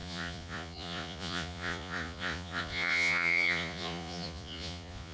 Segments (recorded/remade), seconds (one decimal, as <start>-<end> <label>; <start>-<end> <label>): 0.0-5.1 remade